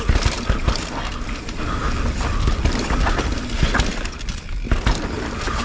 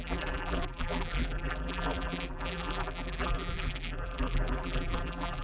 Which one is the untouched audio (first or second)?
first